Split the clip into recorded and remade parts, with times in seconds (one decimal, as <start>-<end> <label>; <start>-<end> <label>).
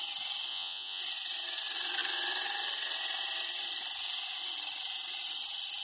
0.0-0.5 recorded; 0.5-1.0 remade; 1.0-5.8 recorded